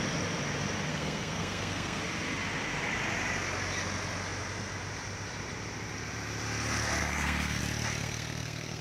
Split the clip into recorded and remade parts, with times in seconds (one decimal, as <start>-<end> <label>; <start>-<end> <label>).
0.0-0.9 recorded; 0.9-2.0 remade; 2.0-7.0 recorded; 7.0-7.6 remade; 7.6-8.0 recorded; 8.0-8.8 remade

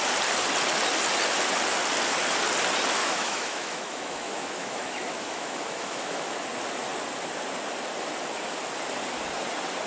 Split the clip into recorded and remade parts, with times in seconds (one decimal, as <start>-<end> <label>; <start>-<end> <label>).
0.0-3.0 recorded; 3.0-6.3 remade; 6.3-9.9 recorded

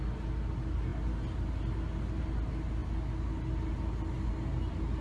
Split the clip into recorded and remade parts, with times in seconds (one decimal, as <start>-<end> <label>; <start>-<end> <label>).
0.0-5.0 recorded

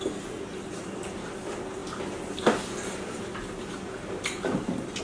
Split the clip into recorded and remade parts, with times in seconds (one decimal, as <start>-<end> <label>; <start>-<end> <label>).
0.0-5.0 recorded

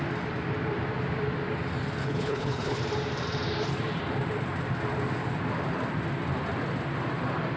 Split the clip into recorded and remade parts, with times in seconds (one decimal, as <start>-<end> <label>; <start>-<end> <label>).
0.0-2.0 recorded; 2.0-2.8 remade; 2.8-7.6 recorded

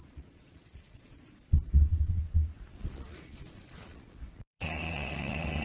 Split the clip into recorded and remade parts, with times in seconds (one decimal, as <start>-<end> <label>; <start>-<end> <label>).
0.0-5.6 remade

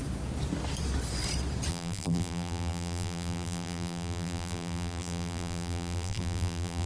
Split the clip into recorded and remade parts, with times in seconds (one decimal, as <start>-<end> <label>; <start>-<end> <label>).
0.0-1.7 recorded; 1.7-6.9 remade

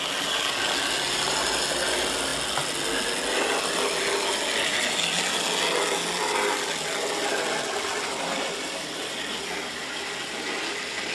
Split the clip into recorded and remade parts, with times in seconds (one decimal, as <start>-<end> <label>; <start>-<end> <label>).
0.0-11.1 recorded